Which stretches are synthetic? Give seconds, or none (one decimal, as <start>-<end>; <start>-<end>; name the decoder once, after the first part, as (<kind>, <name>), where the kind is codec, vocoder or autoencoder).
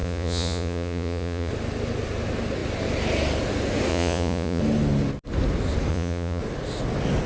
0.0-1.5 (vocoder, Vocos); 3.9-4.6; 5.9-6.4